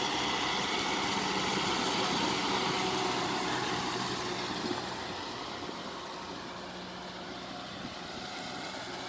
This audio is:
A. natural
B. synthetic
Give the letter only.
A